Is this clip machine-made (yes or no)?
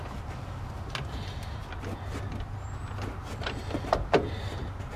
no